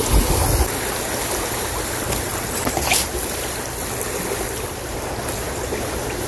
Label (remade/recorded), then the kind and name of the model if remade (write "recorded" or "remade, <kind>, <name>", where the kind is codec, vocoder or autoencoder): recorded